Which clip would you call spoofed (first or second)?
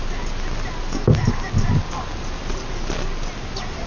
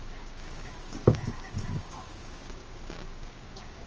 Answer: second